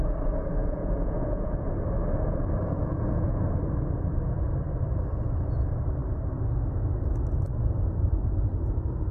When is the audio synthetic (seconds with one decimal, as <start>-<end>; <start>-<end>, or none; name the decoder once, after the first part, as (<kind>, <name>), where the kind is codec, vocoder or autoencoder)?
0.6-1.7 (vocoder, Vocos); 2.8-3.4